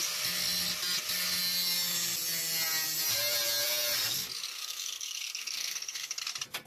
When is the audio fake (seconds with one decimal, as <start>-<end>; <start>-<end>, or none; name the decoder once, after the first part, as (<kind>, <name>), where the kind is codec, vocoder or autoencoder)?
4.5-6.2 (codec, SNAC)